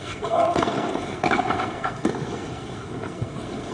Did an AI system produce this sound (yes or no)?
yes